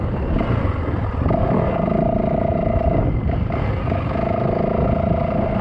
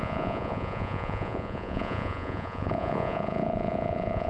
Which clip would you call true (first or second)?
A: first